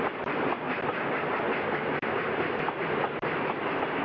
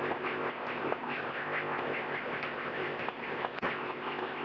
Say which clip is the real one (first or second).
first